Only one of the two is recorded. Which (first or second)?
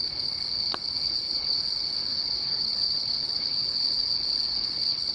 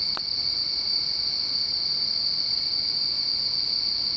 second